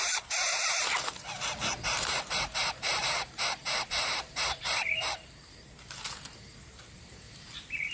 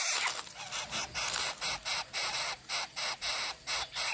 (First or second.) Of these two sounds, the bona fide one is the second